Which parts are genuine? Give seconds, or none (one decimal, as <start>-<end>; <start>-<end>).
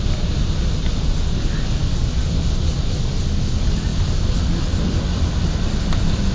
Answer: 0.0-6.3